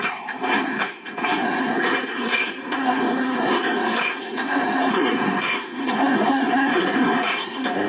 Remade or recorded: remade